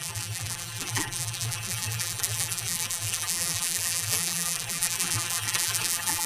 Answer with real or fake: fake